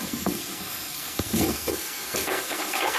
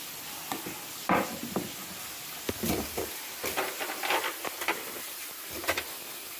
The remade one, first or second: first